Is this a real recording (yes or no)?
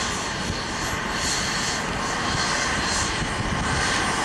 yes